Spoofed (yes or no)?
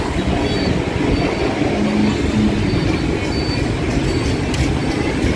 no